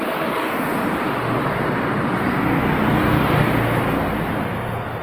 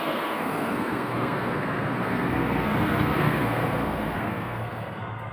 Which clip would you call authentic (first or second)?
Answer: first